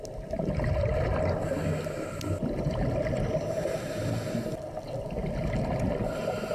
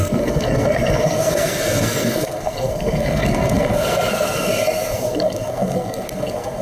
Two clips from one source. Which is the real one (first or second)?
first